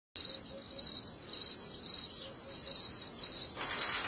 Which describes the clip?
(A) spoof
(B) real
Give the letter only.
B